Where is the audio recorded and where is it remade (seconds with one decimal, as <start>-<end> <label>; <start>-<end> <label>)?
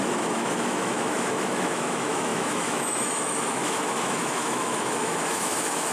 0.0-5.9 remade